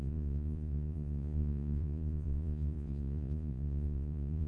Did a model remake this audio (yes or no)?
yes